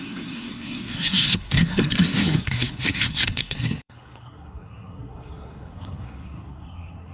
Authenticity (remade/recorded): remade